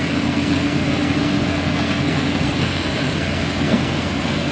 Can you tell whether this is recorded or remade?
remade